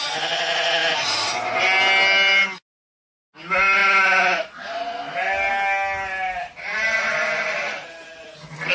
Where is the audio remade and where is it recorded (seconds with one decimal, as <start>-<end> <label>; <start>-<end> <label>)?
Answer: 0.0-8.7 recorded